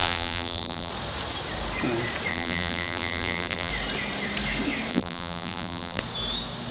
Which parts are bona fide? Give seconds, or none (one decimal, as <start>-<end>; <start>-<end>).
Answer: 0.9-2.3; 3.7-4.9; 6.0-6.7